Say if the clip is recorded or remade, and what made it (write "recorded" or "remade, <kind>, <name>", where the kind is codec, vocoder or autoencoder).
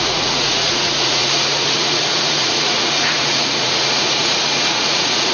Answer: remade, vocoder, Vocos